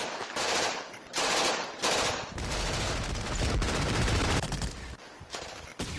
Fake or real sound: fake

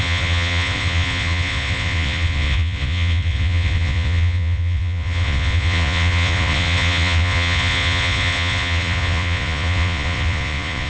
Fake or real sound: fake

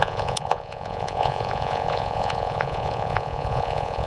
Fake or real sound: fake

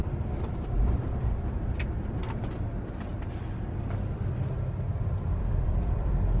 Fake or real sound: fake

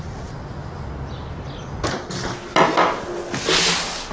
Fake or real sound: real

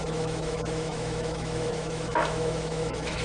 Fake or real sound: fake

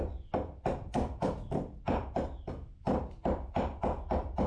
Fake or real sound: real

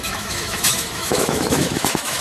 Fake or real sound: fake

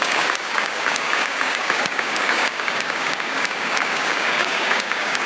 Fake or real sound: fake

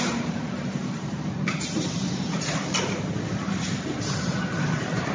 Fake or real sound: fake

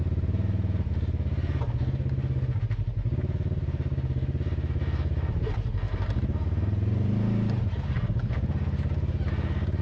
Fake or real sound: real